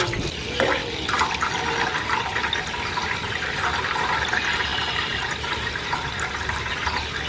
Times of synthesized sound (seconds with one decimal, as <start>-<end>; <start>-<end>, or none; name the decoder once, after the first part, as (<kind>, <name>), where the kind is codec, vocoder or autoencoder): 4.7-7.3 (vocoder, BigVGAN v2)